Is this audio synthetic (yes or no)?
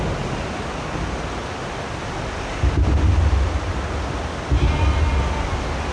no